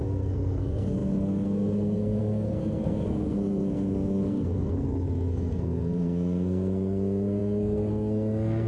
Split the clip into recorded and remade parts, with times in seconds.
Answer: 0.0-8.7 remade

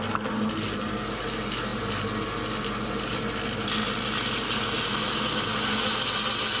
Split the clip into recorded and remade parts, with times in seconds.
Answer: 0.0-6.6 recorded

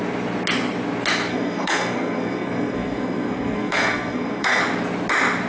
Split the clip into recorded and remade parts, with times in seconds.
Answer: 0.0-1.3 recorded; 1.3-4.6 remade; 4.6-5.5 recorded

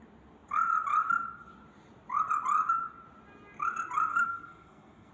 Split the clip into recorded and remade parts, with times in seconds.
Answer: 0.0-4.1 recorded; 4.1-5.1 remade

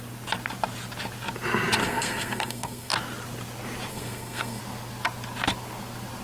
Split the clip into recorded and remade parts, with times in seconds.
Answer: 0.0-1.8 recorded; 1.8-2.9 remade; 2.9-3.9 recorded; 3.9-4.6 remade; 4.6-6.2 recorded

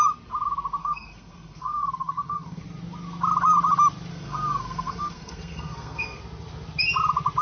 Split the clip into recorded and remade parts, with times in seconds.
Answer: 0.0-0.8 recorded; 0.8-2.6 remade; 2.6-4.1 recorded; 4.1-6.2 remade; 6.2-7.4 recorded